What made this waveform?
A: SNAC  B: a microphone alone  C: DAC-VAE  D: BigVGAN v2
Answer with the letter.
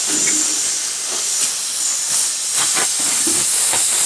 B